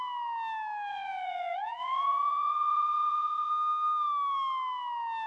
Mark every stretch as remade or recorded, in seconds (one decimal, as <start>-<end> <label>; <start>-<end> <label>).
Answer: 0.0-0.9 recorded; 0.9-3.5 remade; 3.5-5.3 recorded